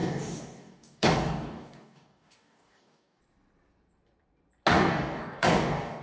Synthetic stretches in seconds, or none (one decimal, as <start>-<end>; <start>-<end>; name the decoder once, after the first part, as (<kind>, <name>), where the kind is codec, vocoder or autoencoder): 0.0-3.2 (codec, DAC); 4.7-6.0